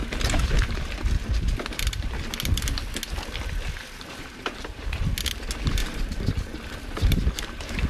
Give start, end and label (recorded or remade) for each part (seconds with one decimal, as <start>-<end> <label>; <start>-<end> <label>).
0.0-0.9 remade; 0.9-3.8 recorded; 3.8-5.0 remade; 5.0-5.8 recorded; 5.8-7.9 remade